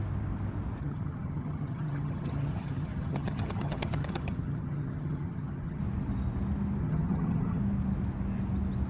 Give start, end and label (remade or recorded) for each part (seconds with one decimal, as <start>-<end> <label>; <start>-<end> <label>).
0.0-0.8 recorded; 0.8-5.8 remade; 5.8-6.8 recorded; 6.8-7.6 remade; 7.6-8.9 recorded